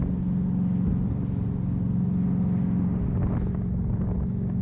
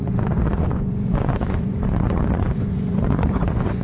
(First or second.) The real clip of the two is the first